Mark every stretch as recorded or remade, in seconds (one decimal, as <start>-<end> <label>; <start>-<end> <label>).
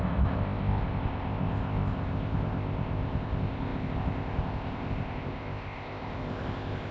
0.0-6.9 remade